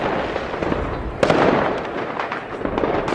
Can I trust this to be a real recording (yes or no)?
yes